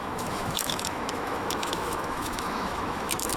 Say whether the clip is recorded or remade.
remade